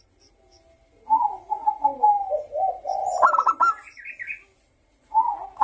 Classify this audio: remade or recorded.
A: recorded